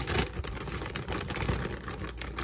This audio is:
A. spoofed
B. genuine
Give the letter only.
B